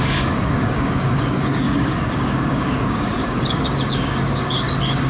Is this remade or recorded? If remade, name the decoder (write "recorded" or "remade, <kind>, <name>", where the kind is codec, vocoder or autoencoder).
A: remade, codec, DAC